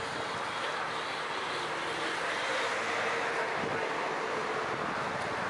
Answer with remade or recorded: recorded